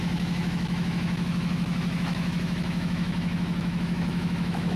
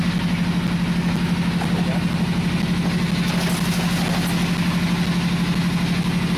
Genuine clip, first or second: second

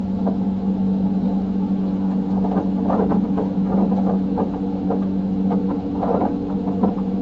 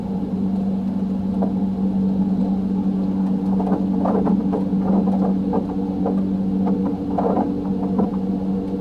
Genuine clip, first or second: second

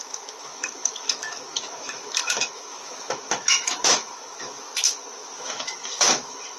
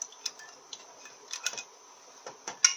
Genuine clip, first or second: second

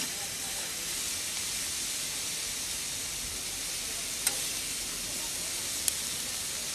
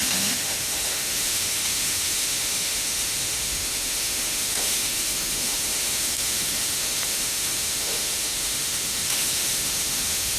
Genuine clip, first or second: first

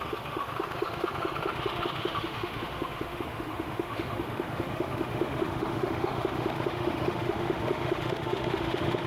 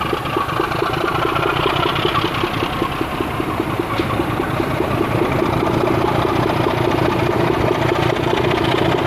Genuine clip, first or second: second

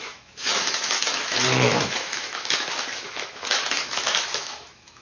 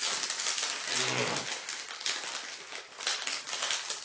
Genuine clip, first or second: second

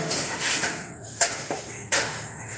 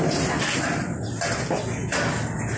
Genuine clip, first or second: second